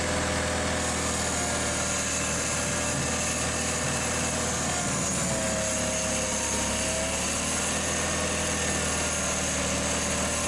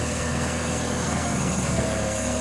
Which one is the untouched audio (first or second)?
first